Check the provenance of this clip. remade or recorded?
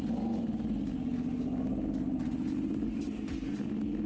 recorded